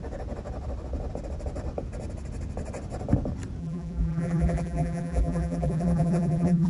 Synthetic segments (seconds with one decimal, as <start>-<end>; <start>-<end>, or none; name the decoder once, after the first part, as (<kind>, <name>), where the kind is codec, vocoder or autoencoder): 3.6-6.7 (vocoder, BigVGAN v2)